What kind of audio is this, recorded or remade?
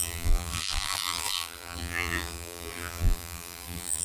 remade